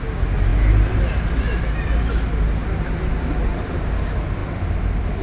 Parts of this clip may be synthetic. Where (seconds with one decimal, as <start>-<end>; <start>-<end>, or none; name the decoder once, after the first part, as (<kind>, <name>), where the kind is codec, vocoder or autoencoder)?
2.6-3.9 (vocoder, BigVGAN v2); 4.4-5.2